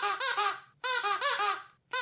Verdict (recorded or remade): remade